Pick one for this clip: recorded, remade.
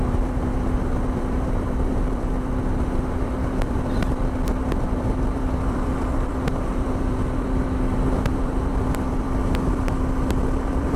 remade